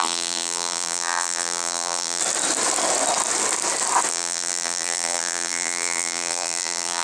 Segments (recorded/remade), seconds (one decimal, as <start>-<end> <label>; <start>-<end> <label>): 0.0-2.2 remade; 2.2-4.1 recorded; 4.1-7.0 remade